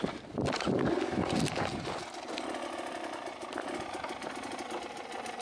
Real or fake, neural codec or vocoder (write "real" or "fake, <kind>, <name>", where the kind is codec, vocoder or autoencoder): real